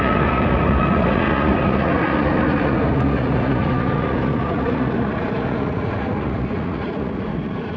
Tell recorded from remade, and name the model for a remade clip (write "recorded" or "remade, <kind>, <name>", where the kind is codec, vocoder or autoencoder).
remade, vocoder, Vocos